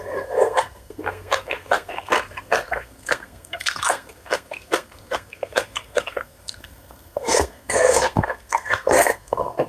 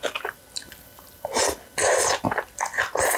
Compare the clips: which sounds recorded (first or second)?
second